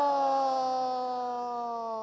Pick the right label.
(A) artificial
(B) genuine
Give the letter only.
B